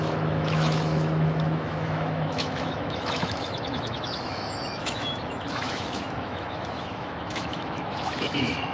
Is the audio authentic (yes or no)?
no